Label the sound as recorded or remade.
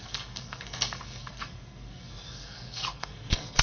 remade